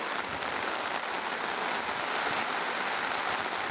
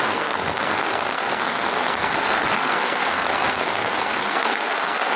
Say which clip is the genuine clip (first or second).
first